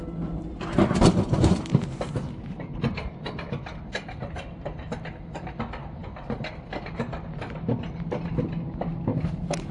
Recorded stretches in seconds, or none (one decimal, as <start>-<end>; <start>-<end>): 0.0-9.7